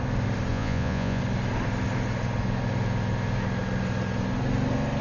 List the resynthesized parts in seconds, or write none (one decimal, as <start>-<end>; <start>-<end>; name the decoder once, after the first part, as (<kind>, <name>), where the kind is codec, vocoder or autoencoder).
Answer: 0.5-1.2 (vocoder, Vocos)